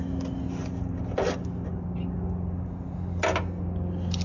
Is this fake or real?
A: real